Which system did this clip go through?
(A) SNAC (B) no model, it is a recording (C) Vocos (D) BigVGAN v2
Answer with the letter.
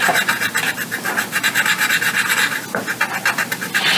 B